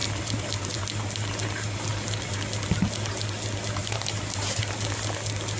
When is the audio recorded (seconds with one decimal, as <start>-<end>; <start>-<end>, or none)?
0.8-1.9; 2.4-3.8; 4.6-5.6